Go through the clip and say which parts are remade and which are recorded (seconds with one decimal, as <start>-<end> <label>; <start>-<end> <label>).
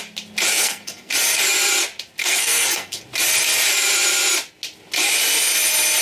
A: 0.0-0.5 recorded; 0.5-1.1 remade; 1.1-2.2 recorded; 2.2-3.0 remade; 3.0-6.0 recorded